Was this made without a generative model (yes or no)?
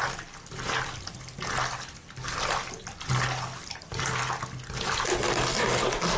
yes